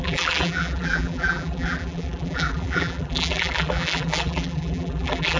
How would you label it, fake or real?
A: fake